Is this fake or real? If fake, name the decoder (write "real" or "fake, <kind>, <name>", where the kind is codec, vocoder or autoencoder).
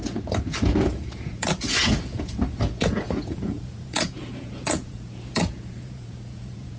fake, vocoder, Vocos